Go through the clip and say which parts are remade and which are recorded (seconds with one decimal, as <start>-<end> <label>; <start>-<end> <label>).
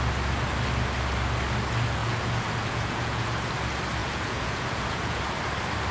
0.0-2.0 recorded; 2.0-3.2 remade; 3.2-4.0 recorded; 4.0-5.2 remade; 5.2-5.9 recorded